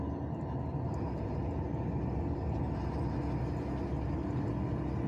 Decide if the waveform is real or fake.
real